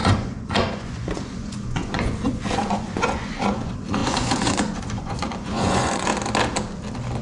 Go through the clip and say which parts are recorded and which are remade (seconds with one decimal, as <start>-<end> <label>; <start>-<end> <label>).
0.0-6.1 remade; 6.1-7.2 recorded